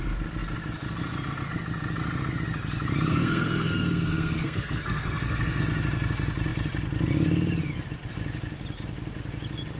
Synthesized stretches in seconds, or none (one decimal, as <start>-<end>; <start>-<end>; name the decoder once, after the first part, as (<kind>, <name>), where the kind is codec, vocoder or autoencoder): 3.1-5.6 (codec, SNAC)